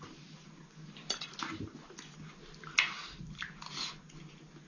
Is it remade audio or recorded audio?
recorded